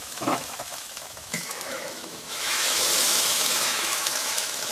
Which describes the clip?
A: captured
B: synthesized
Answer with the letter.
B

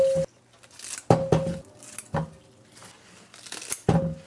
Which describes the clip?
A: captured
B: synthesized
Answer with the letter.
A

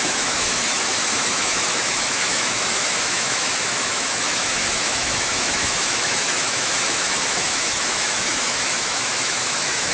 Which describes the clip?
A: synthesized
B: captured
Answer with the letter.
A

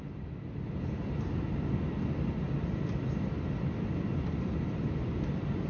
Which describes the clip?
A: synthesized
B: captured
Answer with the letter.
B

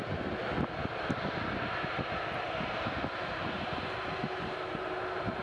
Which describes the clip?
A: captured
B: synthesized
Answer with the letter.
A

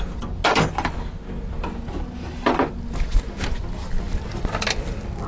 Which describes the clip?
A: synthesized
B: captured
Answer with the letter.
B